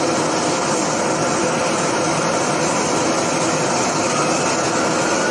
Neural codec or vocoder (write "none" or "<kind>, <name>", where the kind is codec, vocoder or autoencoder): none